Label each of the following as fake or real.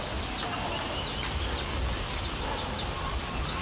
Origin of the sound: real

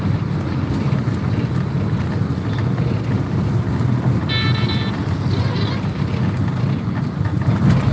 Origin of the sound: real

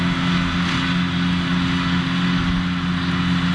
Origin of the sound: real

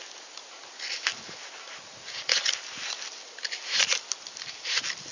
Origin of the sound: real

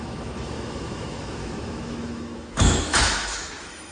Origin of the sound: fake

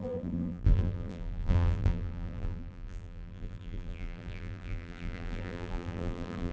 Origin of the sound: fake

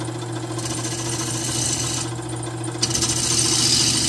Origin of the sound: real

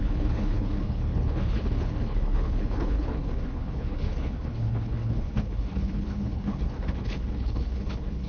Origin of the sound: fake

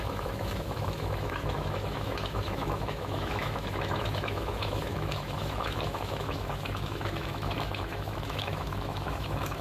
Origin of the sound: fake